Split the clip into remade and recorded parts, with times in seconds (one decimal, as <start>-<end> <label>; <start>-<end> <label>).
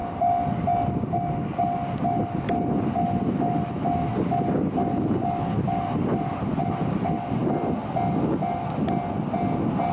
0.0-9.9 recorded